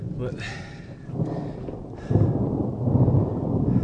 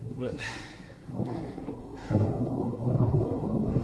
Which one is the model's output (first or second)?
second